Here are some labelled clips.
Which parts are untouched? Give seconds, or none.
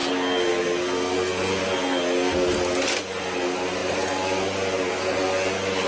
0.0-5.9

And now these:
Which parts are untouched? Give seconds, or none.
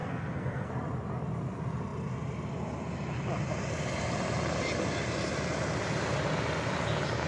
0.7-7.3